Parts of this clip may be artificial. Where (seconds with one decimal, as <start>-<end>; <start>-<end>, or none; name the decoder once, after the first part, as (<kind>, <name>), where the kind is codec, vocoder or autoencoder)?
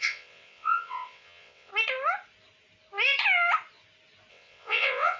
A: 0.0-1.7 (vocoder, WaveNeXt); 4.3-5.2